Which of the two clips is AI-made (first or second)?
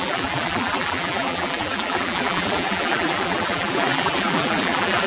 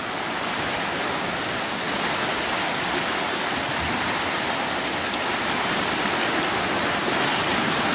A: first